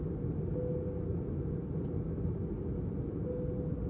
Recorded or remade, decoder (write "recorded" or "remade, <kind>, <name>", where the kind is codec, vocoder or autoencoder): recorded